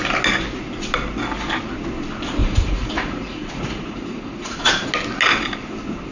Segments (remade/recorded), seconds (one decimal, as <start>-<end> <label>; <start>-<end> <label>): 0.0-2.4 recorded; 2.4-4.9 remade; 4.9-6.1 recorded